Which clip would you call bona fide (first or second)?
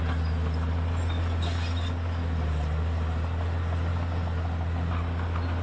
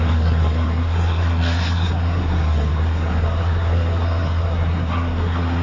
first